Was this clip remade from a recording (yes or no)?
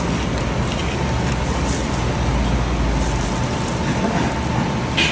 no